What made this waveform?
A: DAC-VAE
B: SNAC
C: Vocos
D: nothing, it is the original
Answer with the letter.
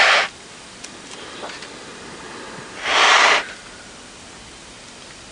D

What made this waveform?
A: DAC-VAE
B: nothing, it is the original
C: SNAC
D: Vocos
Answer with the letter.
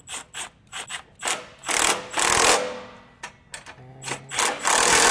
B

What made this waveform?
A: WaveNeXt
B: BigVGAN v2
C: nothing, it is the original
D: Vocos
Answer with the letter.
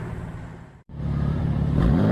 B